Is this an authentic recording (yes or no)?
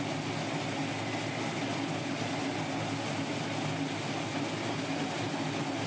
yes